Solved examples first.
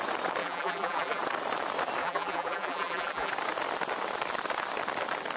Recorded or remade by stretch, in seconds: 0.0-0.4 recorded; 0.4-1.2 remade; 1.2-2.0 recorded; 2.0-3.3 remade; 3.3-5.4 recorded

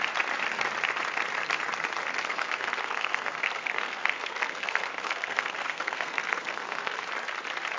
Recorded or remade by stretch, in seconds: 0.0-2.3 recorded; 2.3-7.0 remade; 7.0-7.8 recorded

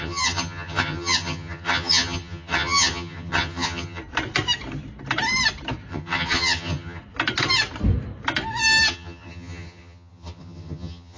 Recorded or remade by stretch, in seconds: 0.0-4.0 remade; 4.0-5.9 recorded; 5.9-7.0 remade; 7.0-8.9 recorded; 8.9-11.2 remade